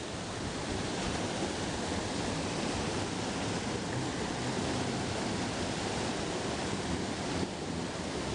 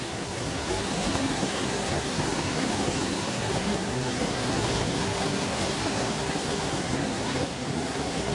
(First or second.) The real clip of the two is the first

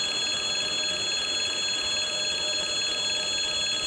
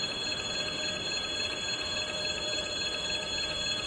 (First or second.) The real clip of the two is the first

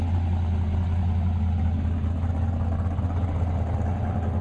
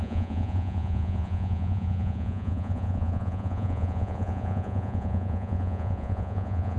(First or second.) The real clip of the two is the first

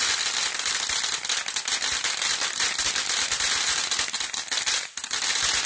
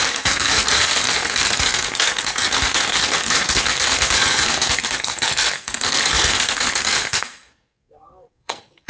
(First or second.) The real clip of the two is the first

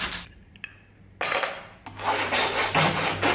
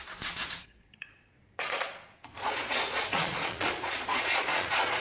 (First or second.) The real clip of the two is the first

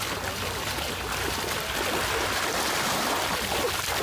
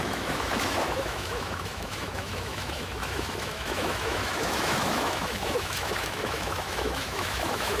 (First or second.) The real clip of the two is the first